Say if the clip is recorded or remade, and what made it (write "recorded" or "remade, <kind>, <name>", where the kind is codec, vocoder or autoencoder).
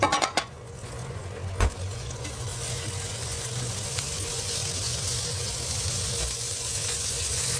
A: remade, vocoder, Vocos